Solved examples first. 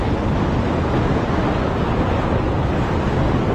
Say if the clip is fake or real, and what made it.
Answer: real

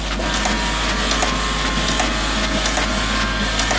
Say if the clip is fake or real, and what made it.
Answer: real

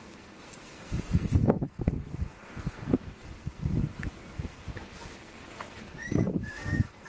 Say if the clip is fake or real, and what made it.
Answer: fake, codec, SNAC